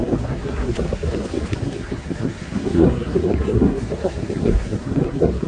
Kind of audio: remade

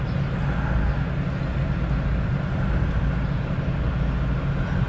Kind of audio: recorded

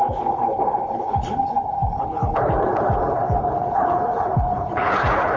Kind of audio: remade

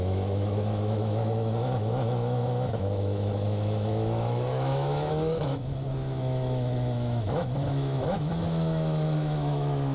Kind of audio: remade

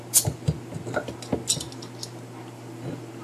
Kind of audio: recorded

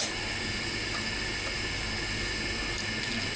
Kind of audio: recorded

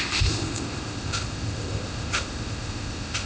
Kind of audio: remade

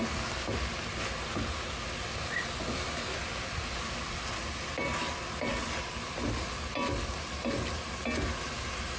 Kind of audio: recorded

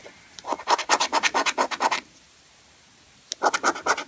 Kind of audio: recorded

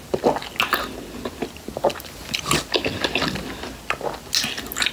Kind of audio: recorded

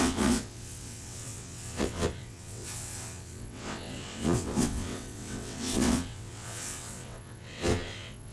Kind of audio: remade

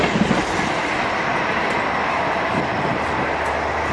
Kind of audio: recorded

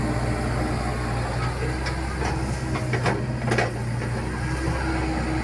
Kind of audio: recorded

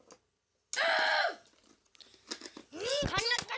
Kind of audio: recorded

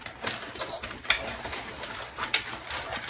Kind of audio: recorded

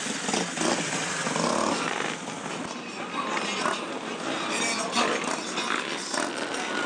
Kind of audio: recorded